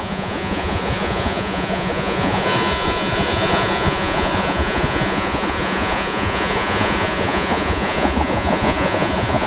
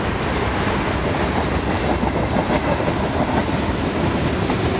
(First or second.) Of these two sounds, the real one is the second